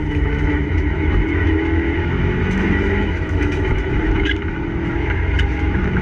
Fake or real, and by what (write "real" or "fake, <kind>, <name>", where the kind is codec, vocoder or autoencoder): fake, autoencoder, DAC-VAE